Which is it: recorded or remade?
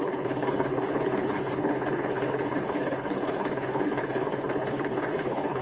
remade